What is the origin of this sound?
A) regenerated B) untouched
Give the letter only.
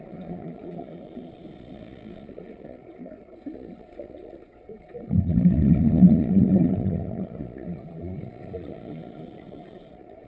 A